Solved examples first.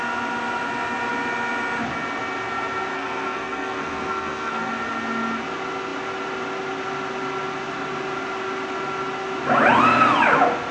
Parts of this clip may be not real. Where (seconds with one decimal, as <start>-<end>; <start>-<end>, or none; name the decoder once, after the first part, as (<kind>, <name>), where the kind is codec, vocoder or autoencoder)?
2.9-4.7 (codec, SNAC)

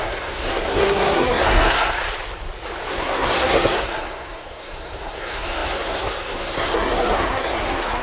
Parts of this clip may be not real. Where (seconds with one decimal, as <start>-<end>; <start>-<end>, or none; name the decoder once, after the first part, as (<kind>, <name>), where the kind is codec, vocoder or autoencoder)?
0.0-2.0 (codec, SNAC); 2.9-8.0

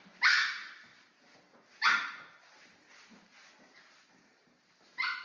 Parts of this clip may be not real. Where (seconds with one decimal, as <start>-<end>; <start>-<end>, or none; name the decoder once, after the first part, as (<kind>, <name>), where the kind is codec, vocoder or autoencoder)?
none

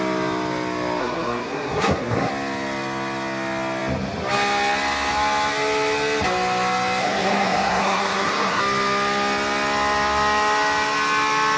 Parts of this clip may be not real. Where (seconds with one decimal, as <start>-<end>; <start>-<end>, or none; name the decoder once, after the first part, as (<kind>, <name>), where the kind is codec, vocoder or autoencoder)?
1.0-2.3 (codec, SNAC); 7.0-8.6

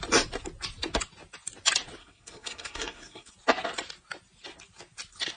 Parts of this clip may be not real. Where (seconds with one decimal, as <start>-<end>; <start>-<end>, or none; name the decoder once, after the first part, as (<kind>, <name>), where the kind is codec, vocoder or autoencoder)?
2.0-3.3 (codec, SNAC)

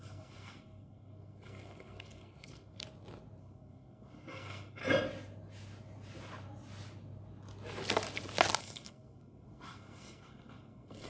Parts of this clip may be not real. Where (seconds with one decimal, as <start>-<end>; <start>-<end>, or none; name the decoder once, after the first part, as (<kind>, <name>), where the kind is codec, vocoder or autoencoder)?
0.0-2.8 (codec, SNAC); 3.4-4.8; 8.6-11.1

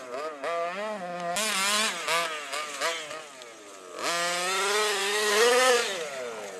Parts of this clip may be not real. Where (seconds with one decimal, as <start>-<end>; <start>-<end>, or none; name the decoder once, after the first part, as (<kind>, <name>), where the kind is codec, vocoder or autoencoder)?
5.0-5.7 (codec, SNAC)